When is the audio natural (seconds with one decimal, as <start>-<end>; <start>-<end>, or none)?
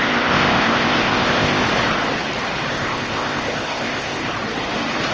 1.6-2.7; 4.3-5.1